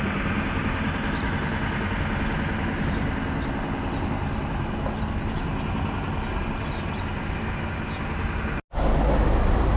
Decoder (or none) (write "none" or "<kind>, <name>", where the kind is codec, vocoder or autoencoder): none